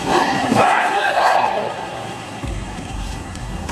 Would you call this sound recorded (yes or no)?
no